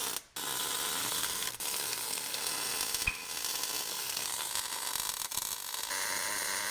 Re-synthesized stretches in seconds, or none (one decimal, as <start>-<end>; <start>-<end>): 1.0-2.4; 3.9-4.5